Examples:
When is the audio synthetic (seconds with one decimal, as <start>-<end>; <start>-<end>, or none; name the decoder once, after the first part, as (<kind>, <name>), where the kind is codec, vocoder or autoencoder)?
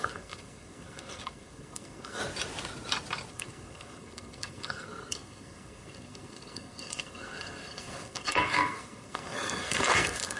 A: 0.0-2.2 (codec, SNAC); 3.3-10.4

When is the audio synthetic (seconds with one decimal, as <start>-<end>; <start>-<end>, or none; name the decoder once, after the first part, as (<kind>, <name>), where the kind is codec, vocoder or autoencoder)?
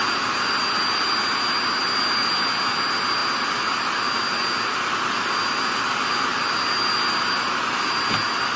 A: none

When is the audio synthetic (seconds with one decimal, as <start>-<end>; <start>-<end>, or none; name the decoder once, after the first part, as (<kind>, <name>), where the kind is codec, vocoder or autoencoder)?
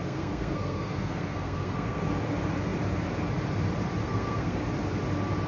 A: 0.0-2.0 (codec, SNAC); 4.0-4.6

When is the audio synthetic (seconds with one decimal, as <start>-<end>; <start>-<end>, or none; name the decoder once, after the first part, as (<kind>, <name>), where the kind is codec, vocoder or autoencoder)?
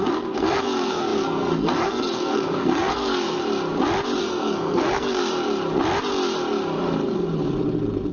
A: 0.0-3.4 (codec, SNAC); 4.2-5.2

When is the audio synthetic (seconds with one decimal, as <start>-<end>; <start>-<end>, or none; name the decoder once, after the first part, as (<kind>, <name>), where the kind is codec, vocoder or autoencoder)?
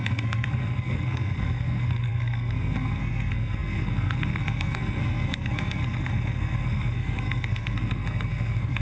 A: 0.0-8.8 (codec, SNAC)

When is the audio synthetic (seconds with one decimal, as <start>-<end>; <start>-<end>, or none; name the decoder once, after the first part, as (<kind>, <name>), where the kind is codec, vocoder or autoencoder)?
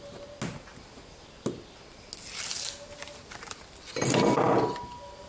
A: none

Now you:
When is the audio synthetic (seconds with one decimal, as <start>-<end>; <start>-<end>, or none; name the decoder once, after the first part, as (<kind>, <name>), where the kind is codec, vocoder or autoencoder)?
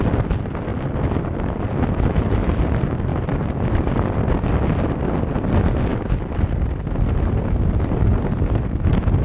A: none